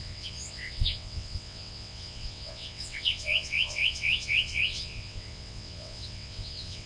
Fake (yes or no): yes